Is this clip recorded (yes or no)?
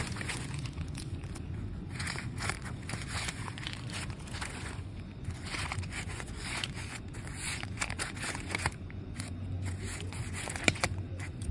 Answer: no